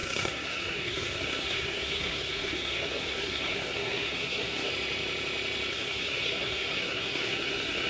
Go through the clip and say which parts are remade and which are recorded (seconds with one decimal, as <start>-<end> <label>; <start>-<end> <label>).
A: 0.0-4.7 remade; 4.7-5.7 recorded; 5.7-7.9 remade